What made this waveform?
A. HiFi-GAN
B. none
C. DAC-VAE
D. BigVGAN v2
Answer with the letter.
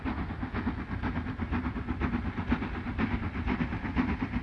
D